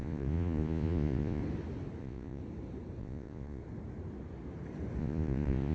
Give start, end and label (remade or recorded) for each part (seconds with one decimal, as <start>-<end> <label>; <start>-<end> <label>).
0.0-1.4 remade; 1.4-2.0 recorded; 2.0-2.4 remade; 2.4-3.0 recorded; 3.0-3.6 remade; 3.6-5.0 recorded; 5.0-5.7 remade